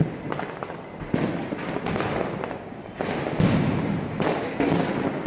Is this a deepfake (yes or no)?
no